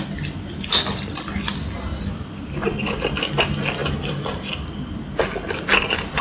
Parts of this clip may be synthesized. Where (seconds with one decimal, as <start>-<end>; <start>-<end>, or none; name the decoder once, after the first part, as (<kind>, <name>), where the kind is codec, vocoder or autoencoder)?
none